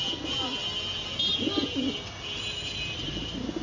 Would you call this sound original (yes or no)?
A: yes